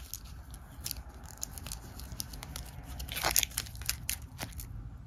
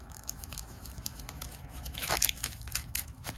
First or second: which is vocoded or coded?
second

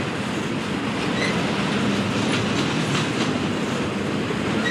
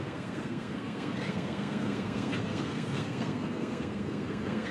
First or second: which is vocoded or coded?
second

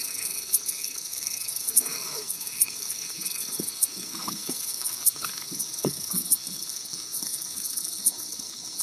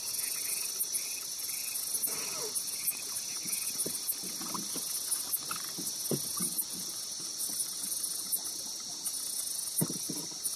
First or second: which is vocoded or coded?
first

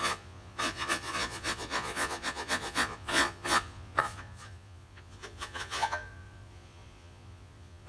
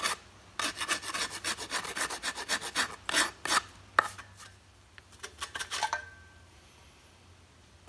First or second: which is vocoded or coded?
first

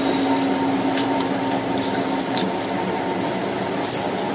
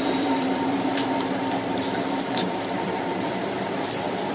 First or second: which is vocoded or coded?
second